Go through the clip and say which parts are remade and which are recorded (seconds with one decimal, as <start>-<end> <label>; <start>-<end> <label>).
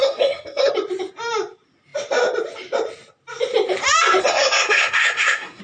0.0-0.7 remade; 0.7-4.2 recorded; 4.2-5.6 remade